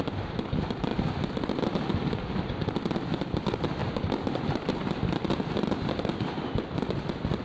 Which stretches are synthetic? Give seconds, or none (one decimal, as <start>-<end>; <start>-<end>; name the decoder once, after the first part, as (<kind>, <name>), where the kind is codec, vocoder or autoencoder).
none